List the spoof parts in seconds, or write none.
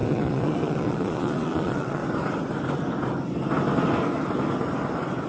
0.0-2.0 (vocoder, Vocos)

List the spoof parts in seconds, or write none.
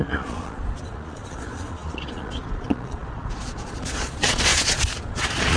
0.0-5.6 (vocoder, Vocos)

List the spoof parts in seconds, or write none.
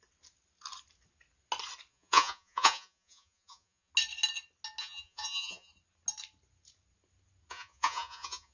1.9-3.9 (vocoder, Vocos); 4.8-5.7; 7.5-8.5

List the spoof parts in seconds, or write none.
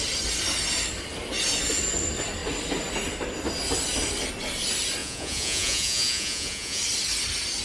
5.0-6.8 (vocoder, Vocos)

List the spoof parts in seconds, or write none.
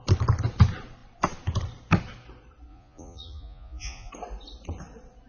2.7-4.1 (vocoder, Vocos)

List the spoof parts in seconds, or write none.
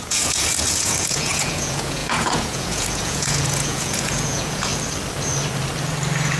0.0-4.7 (vocoder, Vocos)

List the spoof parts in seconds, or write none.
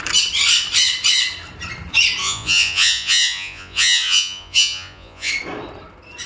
2.2-5.3 (vocoder, Vocos)